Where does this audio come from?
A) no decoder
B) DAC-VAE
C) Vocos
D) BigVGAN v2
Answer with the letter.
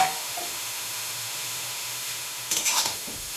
B